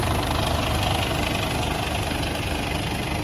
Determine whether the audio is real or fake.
real